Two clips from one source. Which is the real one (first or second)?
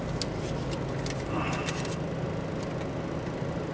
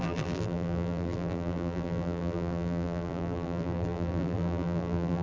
first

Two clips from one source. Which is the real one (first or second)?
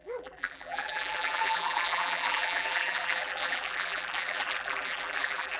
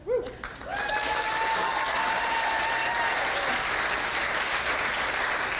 second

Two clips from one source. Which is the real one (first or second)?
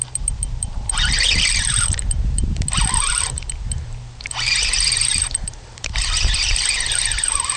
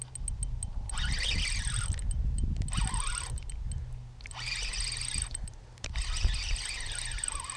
second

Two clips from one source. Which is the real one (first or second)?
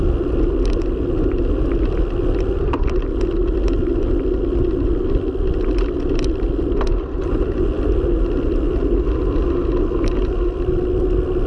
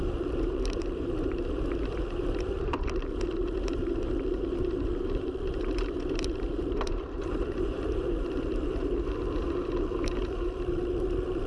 first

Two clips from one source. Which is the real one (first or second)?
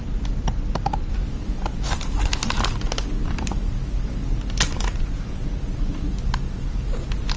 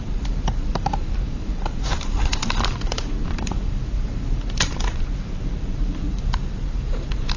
first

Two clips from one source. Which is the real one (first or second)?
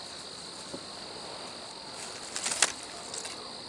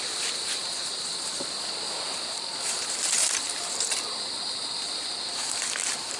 first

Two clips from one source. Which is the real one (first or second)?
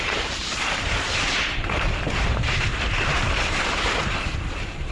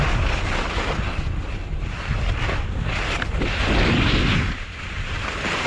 second